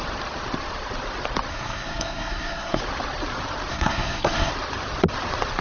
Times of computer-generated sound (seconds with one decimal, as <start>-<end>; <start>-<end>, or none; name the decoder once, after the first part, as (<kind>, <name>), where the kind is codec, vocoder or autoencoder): 1.5-2.8 (codec, SNAC); 3.7-4.5